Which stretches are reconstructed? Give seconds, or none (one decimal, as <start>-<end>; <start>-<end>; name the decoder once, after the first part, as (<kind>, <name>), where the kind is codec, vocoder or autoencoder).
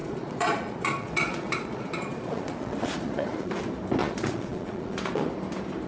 0.0-3.5 (vocoder, Vocos); 4.0-5.3